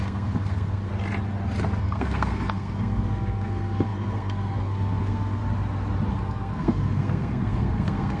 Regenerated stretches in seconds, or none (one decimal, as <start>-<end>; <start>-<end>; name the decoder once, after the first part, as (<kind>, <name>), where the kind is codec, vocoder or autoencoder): 0.0-0.9 (codec, SNAC); 1.8-5.4; 6.1-8.2